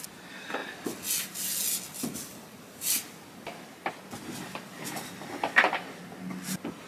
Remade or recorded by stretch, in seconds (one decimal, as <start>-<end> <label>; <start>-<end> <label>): 0.0-6.9 recorded